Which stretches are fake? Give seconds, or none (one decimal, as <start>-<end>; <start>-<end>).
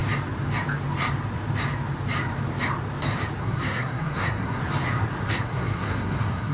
3.4-4.6; 5.3-6.5